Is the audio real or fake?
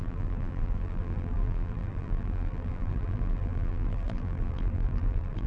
fake